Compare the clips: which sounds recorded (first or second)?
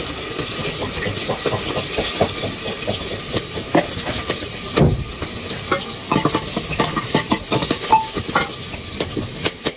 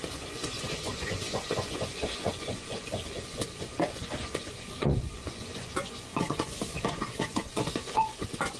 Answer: first